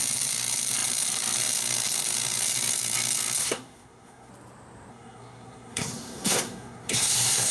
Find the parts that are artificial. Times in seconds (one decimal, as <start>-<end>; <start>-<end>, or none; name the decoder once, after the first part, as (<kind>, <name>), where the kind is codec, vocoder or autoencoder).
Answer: 3.4-4.3 (codec, SNAC); 4.9-7.5